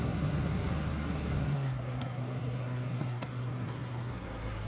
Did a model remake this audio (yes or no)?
yes